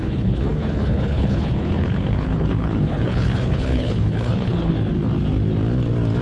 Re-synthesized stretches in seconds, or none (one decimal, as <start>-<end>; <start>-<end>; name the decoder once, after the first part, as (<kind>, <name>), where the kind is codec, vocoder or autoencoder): 0.0-4.7 (codec, HILCodec)